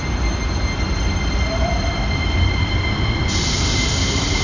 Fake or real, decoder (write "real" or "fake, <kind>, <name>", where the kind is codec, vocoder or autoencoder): real